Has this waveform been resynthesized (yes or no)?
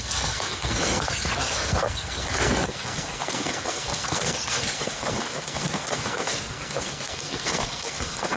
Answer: yes